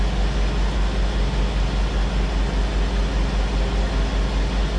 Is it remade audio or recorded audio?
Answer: recorded